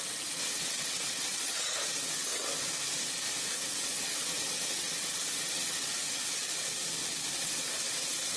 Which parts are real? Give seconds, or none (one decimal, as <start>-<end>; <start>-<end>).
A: 2.5-3.5; 6.4-7.4